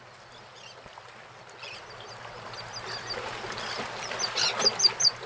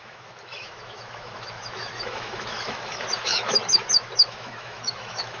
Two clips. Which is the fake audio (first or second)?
second